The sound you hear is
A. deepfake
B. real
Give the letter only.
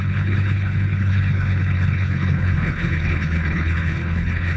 A